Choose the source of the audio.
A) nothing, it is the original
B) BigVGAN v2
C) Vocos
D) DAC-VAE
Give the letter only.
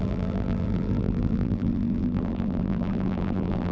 B